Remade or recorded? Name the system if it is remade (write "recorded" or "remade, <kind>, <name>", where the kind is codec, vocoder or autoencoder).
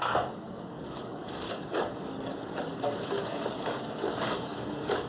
remade, codec, DAC